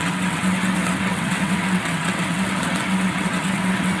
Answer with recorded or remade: remade